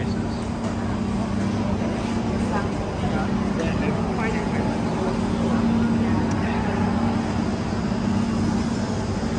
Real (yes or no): yes